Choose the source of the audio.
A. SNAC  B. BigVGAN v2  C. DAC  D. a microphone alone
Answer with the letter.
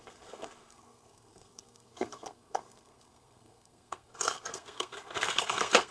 A